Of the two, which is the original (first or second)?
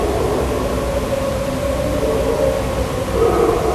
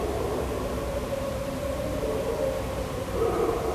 first